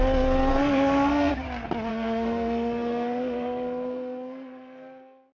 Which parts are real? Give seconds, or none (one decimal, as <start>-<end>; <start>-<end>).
0.0-0.5; 1.3-1.9